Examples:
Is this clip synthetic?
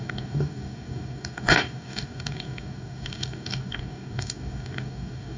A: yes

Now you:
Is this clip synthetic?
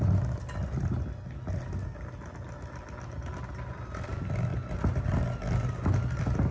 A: no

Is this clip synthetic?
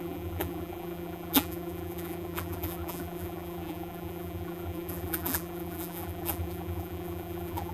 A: yes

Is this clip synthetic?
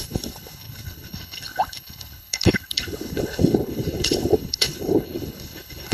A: yes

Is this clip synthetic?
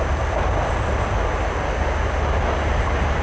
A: no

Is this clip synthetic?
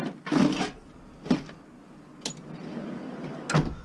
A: no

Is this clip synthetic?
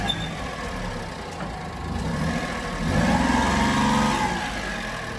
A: no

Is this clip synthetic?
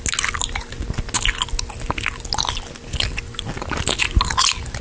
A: no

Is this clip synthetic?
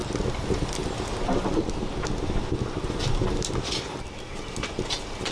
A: no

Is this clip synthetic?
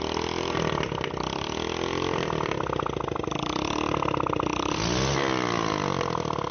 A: no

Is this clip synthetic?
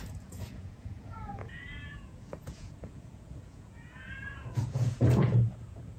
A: yes